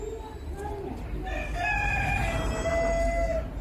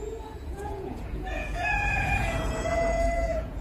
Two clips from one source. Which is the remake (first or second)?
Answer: second